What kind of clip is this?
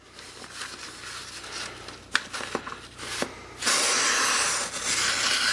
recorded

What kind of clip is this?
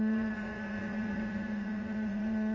remade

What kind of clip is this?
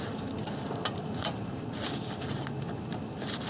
recorded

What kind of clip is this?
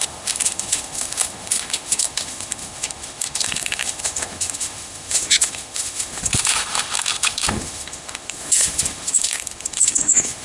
remade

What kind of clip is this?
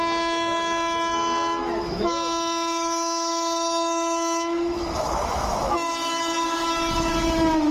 remade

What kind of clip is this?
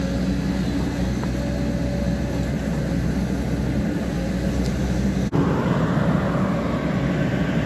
recorded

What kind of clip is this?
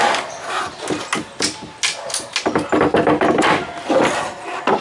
recorded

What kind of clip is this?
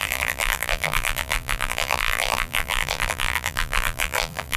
remade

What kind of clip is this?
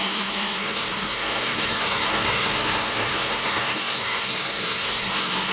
remade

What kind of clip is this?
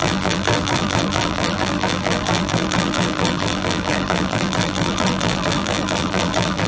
remade